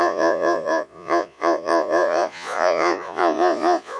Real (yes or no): no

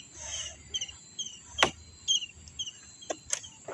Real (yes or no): yes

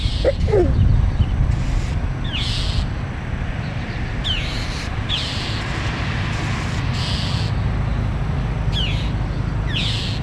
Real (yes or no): yes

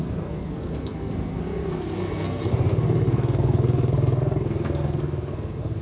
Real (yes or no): no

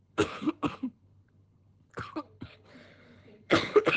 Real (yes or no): no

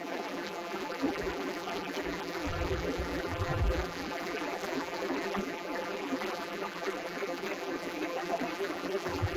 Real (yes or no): no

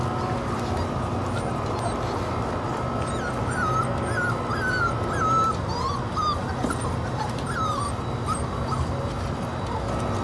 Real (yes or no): yes